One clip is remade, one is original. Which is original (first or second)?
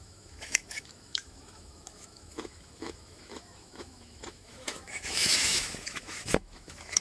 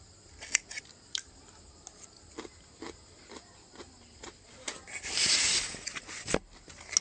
second